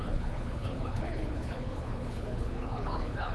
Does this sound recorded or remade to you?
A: remade